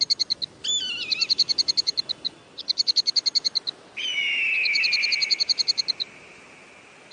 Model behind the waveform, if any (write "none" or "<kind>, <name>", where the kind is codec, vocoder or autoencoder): none